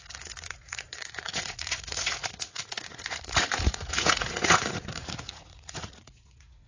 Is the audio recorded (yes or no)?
no